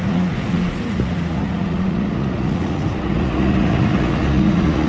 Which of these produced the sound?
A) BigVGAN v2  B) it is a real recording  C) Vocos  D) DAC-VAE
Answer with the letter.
C